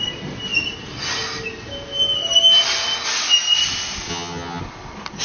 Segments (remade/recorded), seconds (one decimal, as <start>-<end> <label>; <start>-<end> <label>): 0.0-4.1 recorded; 4.1-4.6 remade; 4.6-5.2 recorded